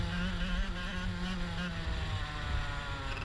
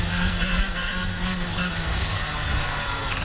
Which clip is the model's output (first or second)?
second